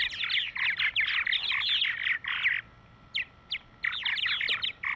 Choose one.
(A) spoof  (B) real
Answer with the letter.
B